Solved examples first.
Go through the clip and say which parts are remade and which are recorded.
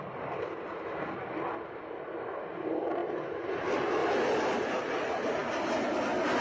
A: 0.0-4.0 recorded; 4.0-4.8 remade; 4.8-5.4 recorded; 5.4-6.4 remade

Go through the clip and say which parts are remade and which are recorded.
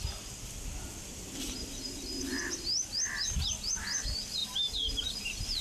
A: 0.0-1.0 recorded; 1.0-2.0 remade; 2.0-4.4 recorded; 4.4-5.6 remade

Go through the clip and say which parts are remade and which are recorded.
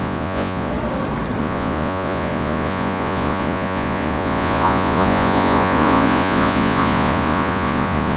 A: 0.0-0.7 remade; 0.7-1.4 recorded; 1.4-8.2 remade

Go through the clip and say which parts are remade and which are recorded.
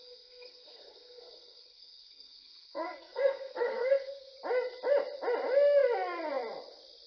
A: 0.0-4.3 remade; 4.3-7.1 recorded